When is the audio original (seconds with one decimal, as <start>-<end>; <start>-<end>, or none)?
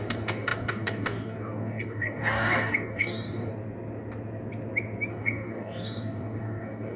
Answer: 3.5-5.1